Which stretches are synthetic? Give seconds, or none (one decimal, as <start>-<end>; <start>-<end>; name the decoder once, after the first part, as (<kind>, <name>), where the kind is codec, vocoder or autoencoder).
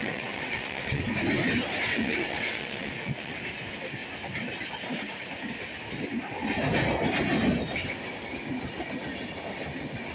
0.0-1.0 (vocoder, WaveNeXt); 1.8-3.4